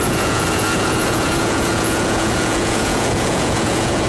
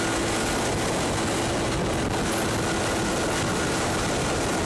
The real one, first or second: second